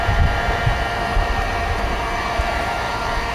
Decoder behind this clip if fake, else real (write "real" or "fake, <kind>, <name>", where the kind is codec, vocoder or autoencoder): fake, vocoder, BigVGAN v2